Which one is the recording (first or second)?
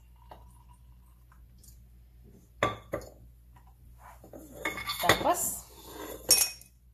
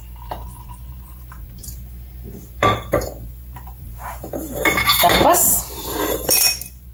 first